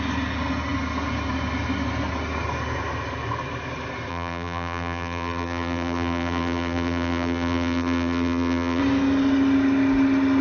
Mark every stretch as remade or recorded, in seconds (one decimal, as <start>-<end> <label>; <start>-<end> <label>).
0.0-4.1 recorded; 4.1-8.8 remade; 8.8-10.4 recorded